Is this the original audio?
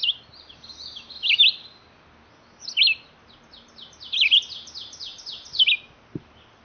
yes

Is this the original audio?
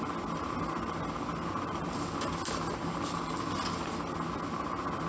yes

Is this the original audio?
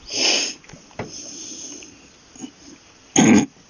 yes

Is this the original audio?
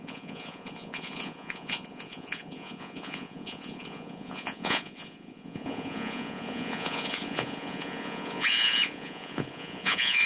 no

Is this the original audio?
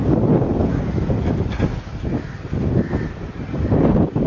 yes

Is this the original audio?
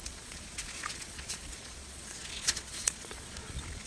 no